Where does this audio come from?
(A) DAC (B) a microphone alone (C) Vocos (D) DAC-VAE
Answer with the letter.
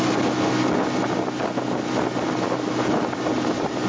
B